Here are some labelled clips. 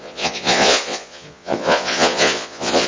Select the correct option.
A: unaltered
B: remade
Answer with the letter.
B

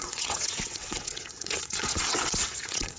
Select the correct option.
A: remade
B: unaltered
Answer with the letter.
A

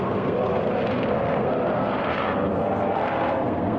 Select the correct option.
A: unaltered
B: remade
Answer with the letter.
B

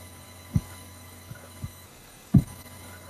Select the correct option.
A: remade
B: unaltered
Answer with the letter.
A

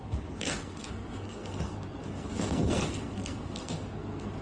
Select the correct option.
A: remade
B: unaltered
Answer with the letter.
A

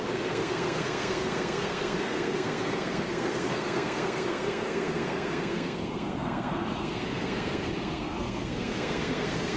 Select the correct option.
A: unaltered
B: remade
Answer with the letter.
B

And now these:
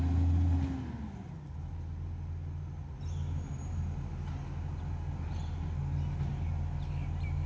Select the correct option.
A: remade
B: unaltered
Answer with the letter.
B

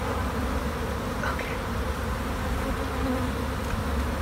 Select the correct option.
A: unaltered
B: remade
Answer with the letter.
A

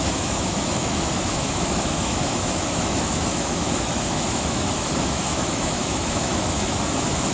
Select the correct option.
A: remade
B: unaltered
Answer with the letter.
A